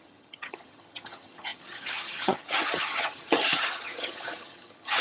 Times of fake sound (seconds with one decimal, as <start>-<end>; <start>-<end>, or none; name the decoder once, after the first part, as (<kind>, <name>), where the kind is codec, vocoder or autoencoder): 0.0-5.0 (vocoder, HiFi-GAN)